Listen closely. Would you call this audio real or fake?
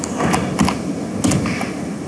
real